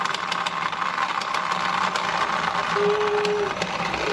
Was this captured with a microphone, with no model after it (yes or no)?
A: yes